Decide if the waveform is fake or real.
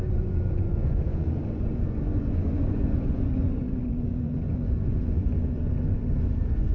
fake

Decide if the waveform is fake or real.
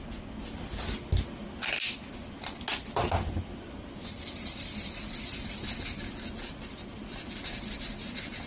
real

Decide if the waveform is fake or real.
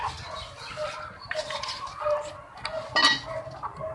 real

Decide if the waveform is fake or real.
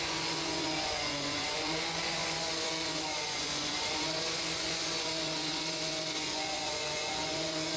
fake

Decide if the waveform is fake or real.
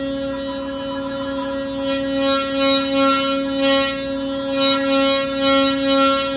real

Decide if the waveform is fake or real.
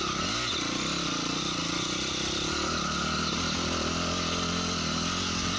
real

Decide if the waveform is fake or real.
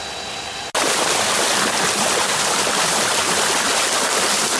real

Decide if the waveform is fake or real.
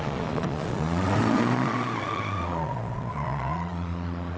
fake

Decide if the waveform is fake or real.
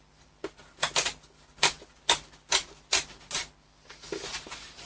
real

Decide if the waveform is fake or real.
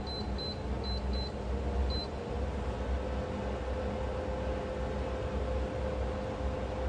real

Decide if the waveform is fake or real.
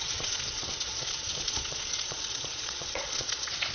fake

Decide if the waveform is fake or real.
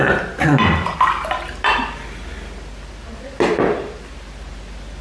real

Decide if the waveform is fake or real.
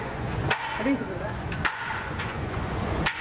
fake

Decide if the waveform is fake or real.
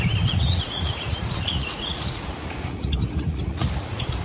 fake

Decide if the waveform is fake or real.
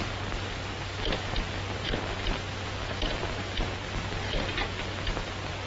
real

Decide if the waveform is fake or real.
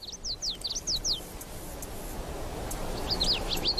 real